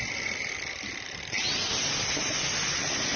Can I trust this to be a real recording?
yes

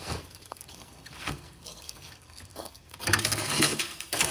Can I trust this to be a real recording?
no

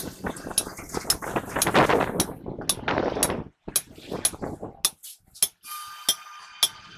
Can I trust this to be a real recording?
yes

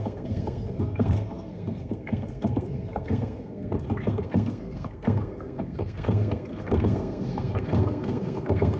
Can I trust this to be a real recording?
no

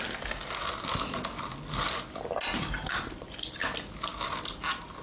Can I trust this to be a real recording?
yes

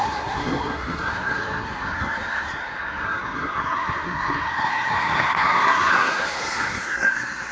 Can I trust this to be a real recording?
no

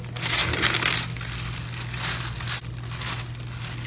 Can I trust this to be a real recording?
yes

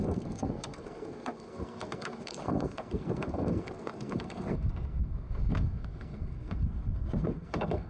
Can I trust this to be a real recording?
no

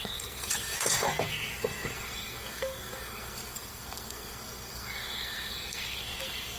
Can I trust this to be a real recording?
no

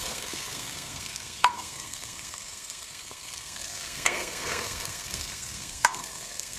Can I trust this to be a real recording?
no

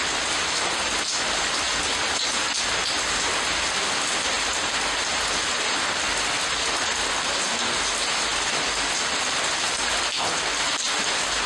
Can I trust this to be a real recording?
yes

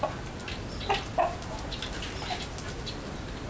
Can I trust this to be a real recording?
yes